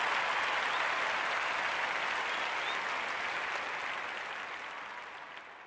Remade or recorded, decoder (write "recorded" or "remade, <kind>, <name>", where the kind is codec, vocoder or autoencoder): recorded